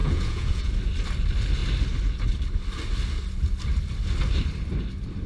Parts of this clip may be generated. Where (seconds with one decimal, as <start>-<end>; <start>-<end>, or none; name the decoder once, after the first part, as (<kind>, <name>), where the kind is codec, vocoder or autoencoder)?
0.0-0.7 (vocoder, Vocos)